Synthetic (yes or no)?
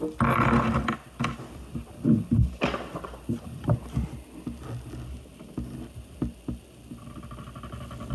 no